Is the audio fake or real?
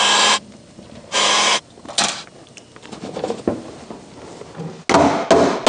real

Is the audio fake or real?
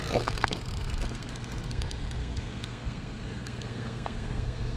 fake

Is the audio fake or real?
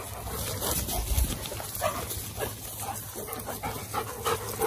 real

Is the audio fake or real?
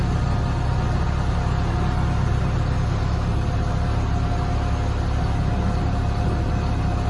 real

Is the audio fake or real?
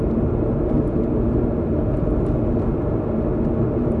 real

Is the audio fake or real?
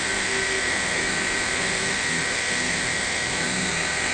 fake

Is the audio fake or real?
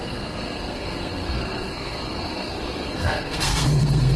fake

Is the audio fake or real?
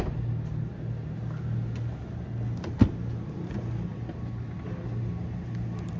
real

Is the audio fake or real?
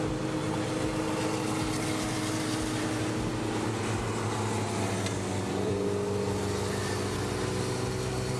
real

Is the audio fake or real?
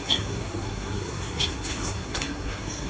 fake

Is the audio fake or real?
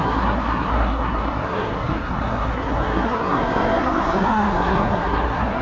fake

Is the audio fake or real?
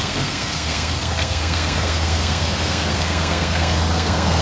fake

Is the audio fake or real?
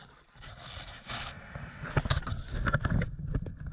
real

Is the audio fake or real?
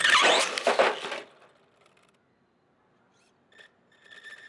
real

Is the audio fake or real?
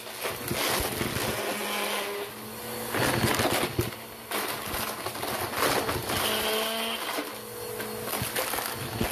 real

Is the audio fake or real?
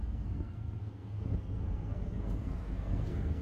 fake